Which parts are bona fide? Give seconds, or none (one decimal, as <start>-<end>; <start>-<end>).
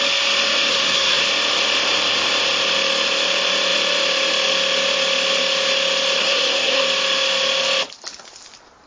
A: 0.0-0.7; 1.2-6.2; 6.8-8.9